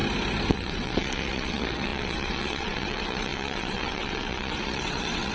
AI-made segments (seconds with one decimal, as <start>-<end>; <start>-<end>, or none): 0.5-5.3